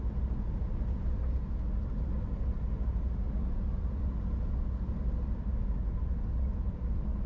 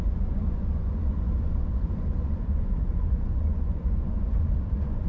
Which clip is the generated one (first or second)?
second